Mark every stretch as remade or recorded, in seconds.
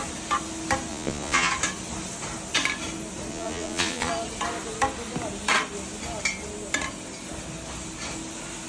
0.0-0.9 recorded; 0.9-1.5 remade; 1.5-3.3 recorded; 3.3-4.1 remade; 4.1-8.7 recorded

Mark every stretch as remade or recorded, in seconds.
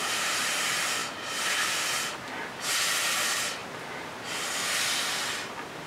0.0-0.6 remade; 0.6-1.0 recorded; 1.0-2.0 remade; 2.0-5.9 recorded